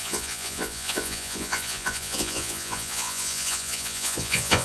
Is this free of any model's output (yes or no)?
no